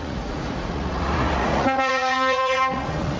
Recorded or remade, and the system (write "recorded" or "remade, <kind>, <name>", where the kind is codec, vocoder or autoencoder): remade, vocoder, Vocos